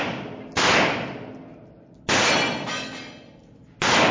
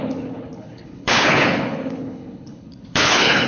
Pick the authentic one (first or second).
first